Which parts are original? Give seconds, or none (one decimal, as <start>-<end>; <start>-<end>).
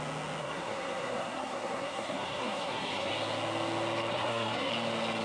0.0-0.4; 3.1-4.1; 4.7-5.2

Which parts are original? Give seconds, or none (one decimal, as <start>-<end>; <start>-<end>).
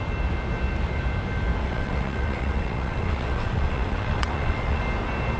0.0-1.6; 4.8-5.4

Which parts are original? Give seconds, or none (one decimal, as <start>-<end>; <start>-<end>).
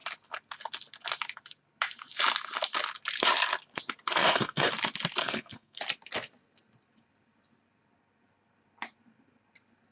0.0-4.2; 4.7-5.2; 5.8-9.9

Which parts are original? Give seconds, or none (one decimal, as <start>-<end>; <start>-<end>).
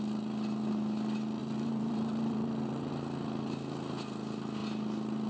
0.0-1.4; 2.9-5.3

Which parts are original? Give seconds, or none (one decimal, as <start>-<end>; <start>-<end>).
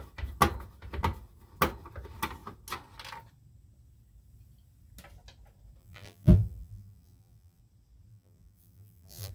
0.0-5.8; 7.6-8.1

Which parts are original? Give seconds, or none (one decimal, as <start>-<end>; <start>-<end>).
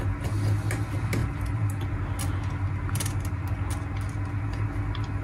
0.0-5.2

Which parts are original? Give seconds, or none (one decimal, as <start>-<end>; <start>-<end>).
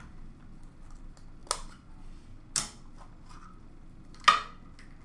0.0-5.0